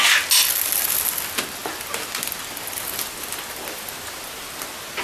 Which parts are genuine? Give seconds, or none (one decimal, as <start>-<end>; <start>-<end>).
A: 0.0-5.0

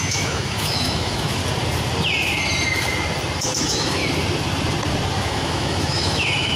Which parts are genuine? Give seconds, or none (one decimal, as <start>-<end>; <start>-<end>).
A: 1.4-3.4; 4.0-5.2

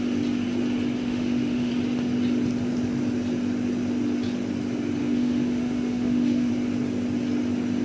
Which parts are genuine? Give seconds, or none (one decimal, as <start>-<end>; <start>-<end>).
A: 0.0-1.0; 1.7-5.0; 6.5-7.8

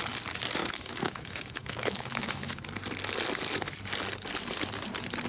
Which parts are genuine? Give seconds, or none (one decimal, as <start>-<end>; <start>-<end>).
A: 0.0-0.6; 2.6-5.3

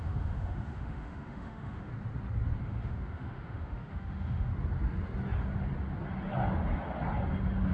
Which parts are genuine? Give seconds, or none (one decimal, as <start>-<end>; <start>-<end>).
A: 1.9-2.6; 4.5-7.7